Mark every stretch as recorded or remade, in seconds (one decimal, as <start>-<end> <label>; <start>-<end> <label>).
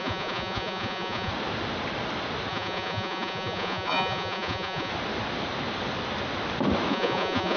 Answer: 0.0-1.3 remade; 1.3-2.5 recorded; 2.5-4.9 remade; 4.9-6.9 recorded; 6.9-7.6 remade